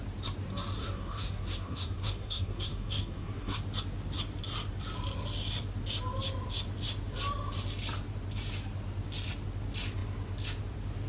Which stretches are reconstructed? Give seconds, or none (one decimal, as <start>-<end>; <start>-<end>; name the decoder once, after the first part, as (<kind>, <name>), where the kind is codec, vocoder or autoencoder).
0.8-3.6 (codec, SNAC)